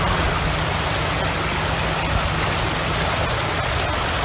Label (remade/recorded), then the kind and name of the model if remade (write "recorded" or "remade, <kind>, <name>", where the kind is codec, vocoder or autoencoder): recorded